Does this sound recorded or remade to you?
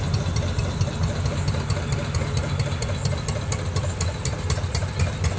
recorded